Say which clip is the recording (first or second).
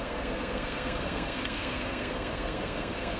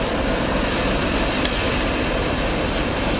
second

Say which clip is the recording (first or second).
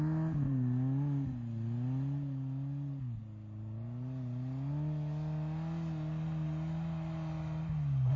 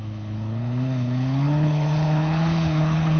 first